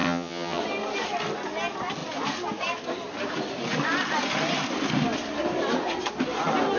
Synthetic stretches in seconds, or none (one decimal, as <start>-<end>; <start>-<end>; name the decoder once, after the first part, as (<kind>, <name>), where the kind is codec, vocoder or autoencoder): 0.0-0.6 (vocoder, HiFi-GAN)